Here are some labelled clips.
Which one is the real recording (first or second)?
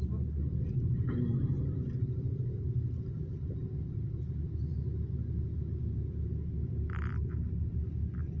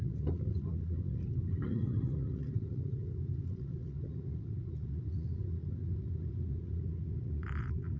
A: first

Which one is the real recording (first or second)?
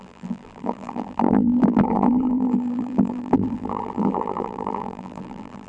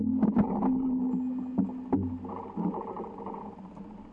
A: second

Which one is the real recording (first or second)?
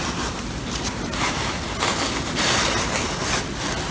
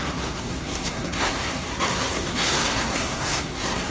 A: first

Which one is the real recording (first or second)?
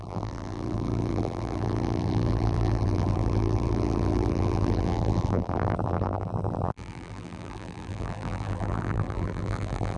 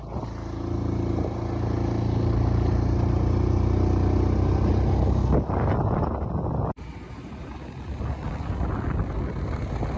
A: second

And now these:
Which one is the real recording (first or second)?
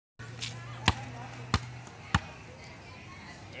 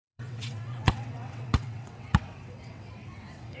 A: first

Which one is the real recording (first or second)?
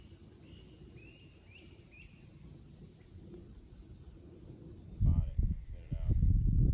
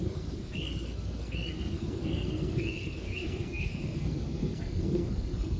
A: first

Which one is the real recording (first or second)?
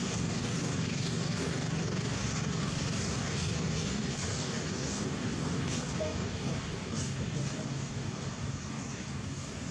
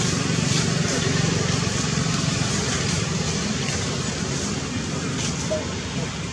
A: second